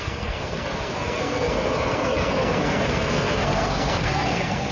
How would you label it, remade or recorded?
remade